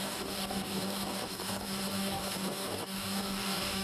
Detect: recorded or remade remade